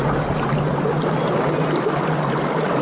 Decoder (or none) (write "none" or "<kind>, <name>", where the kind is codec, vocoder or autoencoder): none